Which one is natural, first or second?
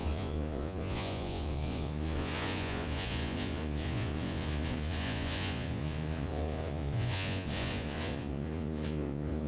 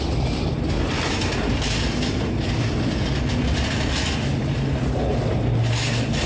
second